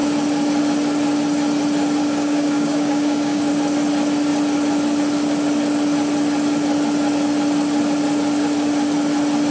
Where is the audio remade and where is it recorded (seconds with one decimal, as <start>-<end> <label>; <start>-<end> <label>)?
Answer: 0.0-2.0 recorded; 2.0-3.5 remade; 3.5-9.5 recorded